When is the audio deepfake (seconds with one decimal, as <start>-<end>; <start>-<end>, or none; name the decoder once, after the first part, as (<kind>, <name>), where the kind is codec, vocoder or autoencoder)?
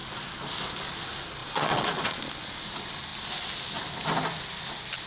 1.4-2.2 (vocoder, Vocos)